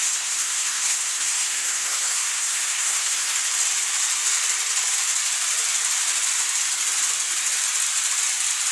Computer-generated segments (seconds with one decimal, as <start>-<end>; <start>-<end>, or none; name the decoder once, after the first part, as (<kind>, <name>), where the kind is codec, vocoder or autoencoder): 0.0-3.4 (codec, SNAC)